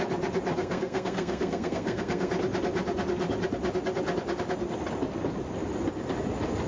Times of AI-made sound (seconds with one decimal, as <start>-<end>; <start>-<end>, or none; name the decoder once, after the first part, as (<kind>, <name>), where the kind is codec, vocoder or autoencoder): 0.6-2.3 (codec, SNAC)